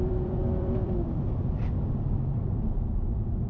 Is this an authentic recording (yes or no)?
no